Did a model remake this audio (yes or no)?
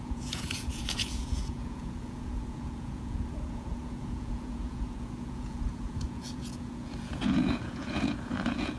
yes